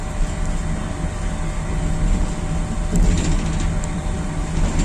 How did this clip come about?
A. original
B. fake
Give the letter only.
A